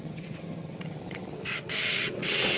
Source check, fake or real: fake